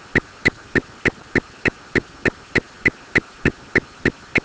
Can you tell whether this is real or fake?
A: real